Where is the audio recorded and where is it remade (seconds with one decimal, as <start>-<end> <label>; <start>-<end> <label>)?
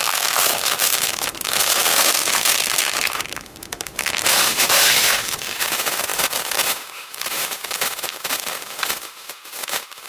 0.0-10.1 remade